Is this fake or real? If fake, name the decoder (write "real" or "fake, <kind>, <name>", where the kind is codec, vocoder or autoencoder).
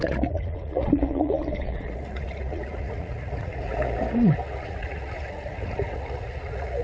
fake, vocoder, Vocos